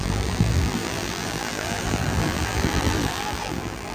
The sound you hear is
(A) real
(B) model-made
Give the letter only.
B